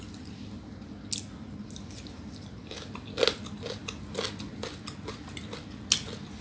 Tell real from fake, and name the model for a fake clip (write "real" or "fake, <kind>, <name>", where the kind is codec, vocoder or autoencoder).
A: real